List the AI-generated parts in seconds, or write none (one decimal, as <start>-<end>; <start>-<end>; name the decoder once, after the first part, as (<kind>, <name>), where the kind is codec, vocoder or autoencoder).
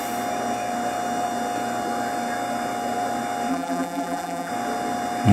3.5-4.5 (vocoder, BigVGAN v2)